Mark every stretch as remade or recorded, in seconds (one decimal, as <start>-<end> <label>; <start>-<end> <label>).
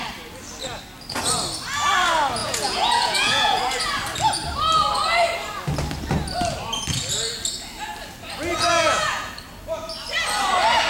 0.0-2.4 recorded; 2.4-3.6 remade; 3.6-8.5 recorded; 8.5-9.3 remade; 9.3-10.9 recorded